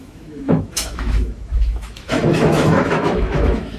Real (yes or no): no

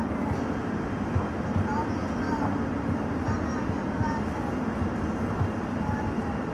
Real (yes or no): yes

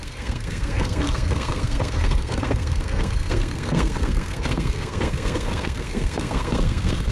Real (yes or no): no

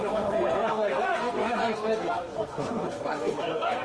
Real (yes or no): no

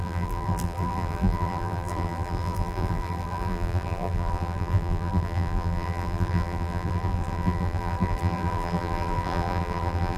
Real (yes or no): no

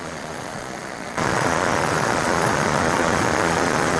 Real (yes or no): no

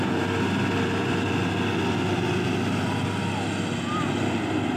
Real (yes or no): yes